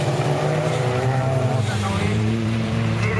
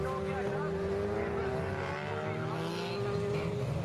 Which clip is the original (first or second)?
second